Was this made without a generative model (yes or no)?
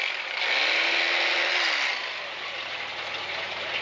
yes